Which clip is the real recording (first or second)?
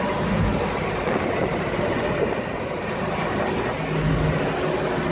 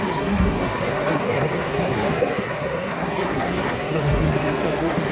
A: first